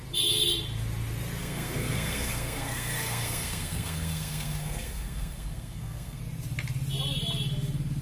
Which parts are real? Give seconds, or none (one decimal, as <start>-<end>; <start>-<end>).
0.0-1.4; 6.2-8.0